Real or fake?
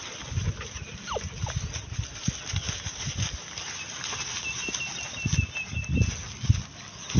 real